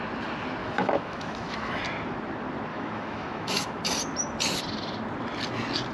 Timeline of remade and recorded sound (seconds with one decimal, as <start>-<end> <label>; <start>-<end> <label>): 0.0-0.6 recorded; 0.6-1.8 remade; 1.8-2.7 recorded; 2.7-3.8 remade; 3.8-5.9 recorded